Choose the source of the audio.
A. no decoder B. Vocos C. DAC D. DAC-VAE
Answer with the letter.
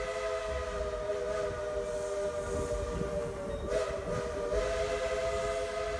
A